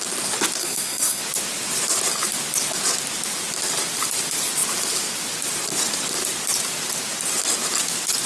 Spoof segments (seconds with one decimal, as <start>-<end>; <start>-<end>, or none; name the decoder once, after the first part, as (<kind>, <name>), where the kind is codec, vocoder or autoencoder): 0.6-1.2 (codec, SNAC)